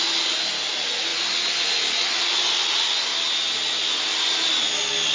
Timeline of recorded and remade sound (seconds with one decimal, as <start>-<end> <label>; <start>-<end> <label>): 0.0-5.1 recorded